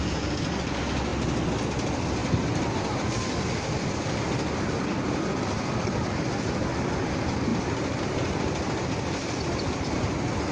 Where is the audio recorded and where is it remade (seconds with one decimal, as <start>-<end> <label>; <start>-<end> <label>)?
0.0-10.5 recorded